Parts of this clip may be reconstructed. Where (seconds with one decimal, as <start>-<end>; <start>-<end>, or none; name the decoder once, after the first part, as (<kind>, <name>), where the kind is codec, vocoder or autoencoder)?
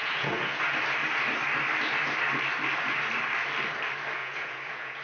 0.0-0.6 (vocoder, Vocos); 4.2-5.0